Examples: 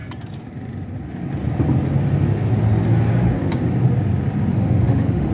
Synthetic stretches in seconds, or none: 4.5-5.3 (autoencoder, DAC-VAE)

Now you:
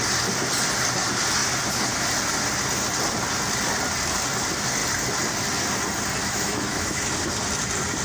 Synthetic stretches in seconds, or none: 6.2-7.1 (autoencoder, DAC-VAE)

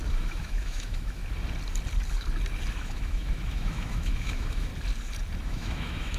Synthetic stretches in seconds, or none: 0.0-1.2 (autoencoder, DAC-VAE); 2.7-4.7; 5.4-6.2

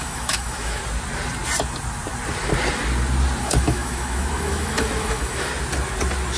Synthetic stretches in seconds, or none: 0.0-0.8 (autoencoder, DAC-VAE); 3.4-5.5

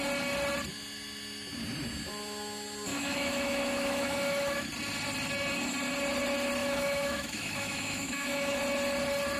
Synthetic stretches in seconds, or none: 2.9-4.7 (autoencoder, DAC-VAE); 6.6-8.6

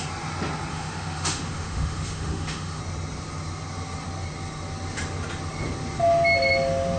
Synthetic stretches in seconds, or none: 0.7-2.8 (autoencoder, DAC-VAE)